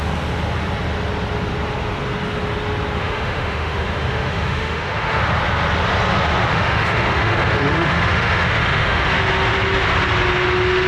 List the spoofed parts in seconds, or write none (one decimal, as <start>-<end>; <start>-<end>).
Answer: 3.0-5.2; 6.5-9.1